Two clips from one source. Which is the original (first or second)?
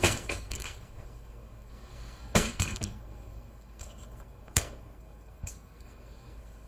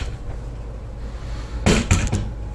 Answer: second